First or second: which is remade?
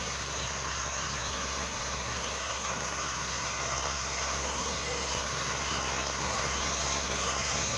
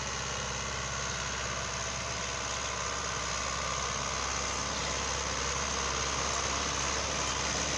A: first